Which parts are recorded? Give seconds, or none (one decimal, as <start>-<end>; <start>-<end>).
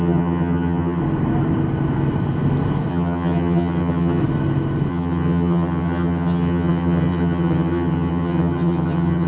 1.0-2.9; 4.2-4.9